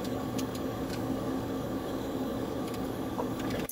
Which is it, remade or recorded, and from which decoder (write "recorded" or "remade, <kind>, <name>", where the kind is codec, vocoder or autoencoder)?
remade, codec, DAC